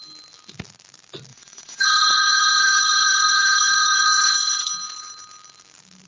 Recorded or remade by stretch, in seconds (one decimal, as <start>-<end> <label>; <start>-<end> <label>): 0.0-1.3 recorded; 1.3-4.6 remade; 4.6-6.1 recorded